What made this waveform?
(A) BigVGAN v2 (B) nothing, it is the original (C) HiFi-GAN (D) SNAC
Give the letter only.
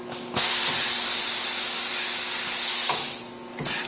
B